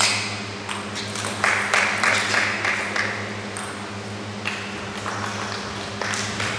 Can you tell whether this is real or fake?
real